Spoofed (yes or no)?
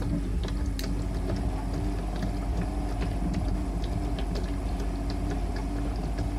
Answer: no